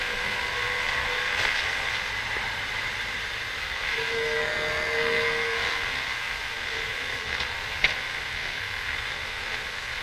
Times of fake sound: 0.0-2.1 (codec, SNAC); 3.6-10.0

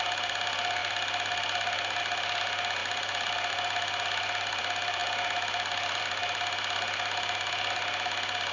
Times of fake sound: none

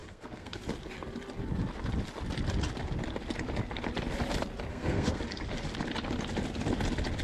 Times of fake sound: 0.0-0.6 (codec, SNAC); 4.7-5.2

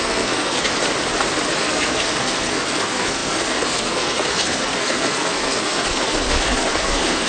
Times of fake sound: 0.0-0.7 (codec, SNAC); 1.6-7.3

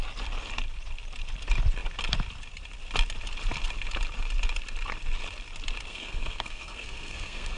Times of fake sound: 5.9-7.6 (codec, SNAC)

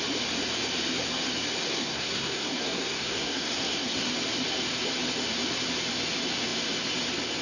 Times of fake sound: 1.7-4.1 (codec, SNAC)